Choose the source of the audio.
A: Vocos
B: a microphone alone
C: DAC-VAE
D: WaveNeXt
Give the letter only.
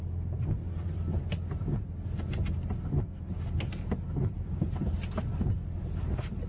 B